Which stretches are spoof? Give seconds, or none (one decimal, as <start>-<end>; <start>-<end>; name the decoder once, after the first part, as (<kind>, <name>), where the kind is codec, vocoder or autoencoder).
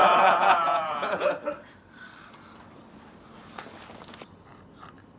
0.0-1.3 (vocoder, Vocos)